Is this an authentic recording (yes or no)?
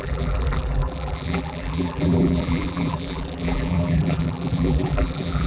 no